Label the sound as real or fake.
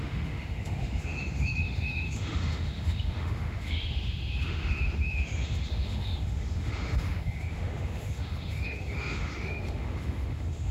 fake